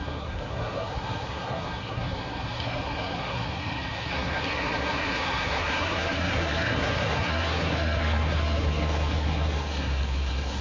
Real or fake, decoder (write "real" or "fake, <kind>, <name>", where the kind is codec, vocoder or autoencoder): fake, codec, SNAC